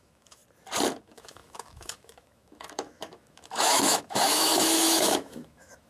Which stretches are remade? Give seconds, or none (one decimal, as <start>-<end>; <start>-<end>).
0.0-0.4; 1.0-5.9